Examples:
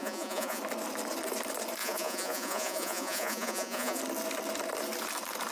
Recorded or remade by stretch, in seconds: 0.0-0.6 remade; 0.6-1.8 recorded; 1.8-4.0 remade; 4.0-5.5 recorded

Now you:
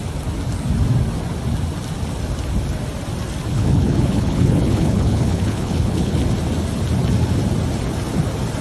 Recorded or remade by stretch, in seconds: 0.0-3.5 recorded; 3.5-6.2 remade; 6.2-8.6 recorded

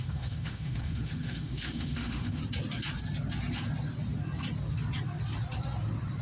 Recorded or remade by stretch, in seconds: 0.0-2.4 remade; 2.4-6.2 recorded

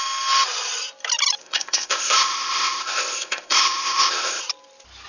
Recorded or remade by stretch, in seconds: 0.0-1.4 recorded; 1.4-4.4 remade; 4.4-5.1 recorded

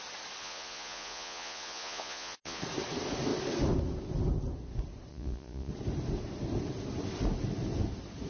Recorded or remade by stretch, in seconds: 0.0-0.4 recorded; 0.4-2.6 remade; 2.6-5.1 recorded; 5.1-5.7 remade; 5.7-8.3 recorded

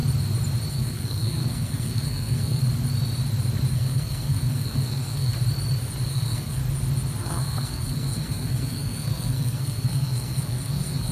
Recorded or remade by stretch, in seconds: 0.0-0.7 recorded; 0.7-2.6 remade; 2.6-3.7 recorded; 3.7-5.3 remade; 5.3-6.1 recorded; 6.1-6.6 remade; 6.6-7.2 recorded; 7.2-11.1 remade

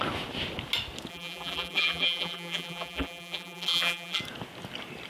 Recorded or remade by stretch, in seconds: 0.0-1.1 recorded; 1.1-4.2 remade; 4.2-5.1 recorded

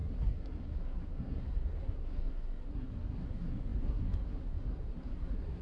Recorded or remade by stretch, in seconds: 0.0-5.6 remade